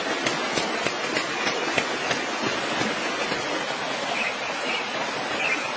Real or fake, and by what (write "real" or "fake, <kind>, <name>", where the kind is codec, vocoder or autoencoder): real